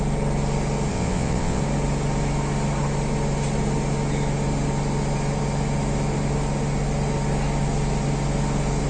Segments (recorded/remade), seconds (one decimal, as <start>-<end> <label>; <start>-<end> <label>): 0.0-0.9 recorded; 0.9-1.6 remade; 1.6-8.9 recorded